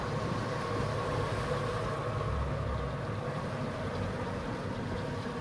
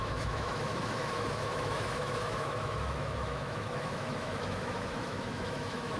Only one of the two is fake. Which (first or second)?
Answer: second